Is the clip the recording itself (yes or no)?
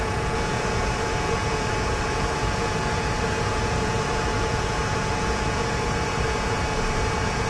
no